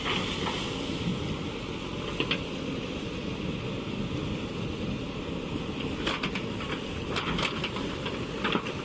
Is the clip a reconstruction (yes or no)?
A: no